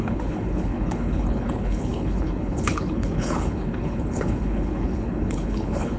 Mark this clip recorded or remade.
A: remade